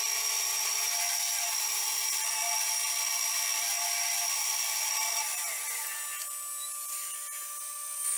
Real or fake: real